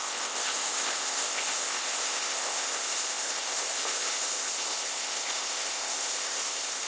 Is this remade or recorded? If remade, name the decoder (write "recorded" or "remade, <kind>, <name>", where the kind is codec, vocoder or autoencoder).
remade, codec, ZipCodec